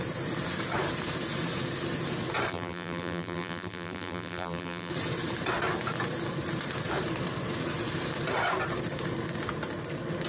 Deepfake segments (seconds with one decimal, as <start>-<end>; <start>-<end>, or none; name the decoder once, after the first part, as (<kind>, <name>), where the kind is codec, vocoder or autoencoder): 2.5-4.9 (vocoder, BigVGAN v2)